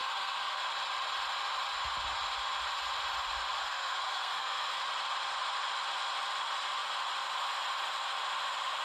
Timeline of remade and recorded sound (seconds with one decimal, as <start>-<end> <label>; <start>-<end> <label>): 0.0-0.6 remade; 0.6-3.6 recorded; 3.6-4.8 remade; 4.8-8.8 recorded